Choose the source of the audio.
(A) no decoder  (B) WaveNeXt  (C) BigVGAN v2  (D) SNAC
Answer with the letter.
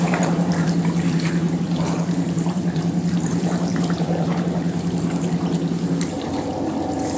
C